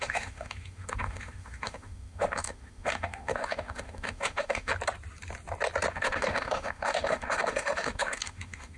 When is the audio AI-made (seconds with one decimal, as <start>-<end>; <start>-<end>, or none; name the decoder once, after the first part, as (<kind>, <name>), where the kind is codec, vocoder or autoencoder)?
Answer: 0.0-4.7 (autoencoder, DAC-VAE); 5.9-8.8